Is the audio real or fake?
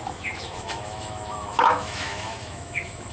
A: fake